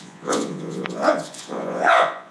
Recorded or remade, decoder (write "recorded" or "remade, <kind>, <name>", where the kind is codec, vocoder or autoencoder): remade, vocoder, Vocos